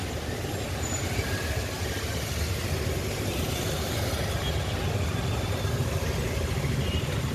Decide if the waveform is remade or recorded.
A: recorded